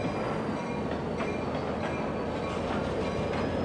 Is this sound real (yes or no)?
yes